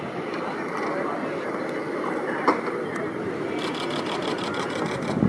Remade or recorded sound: recorded